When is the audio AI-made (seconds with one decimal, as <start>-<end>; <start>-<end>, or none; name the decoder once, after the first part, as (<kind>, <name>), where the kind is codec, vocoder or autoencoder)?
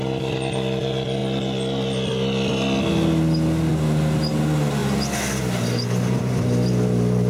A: none